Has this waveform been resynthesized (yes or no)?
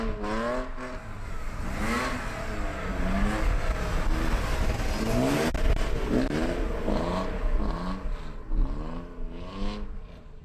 no